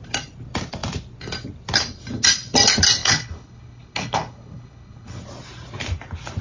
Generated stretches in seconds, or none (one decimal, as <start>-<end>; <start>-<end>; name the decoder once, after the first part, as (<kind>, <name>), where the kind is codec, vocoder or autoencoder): 3.0-5.2 (codec, HILCodec)